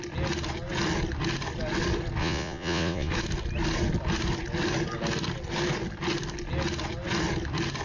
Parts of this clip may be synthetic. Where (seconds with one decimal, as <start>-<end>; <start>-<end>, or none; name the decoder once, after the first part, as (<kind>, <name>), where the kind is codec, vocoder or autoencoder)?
2.2-3.1 (vocoder, Vocos)